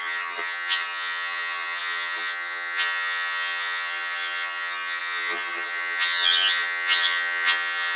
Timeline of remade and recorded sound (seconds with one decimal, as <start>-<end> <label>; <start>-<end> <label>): 0.0-8.0 remade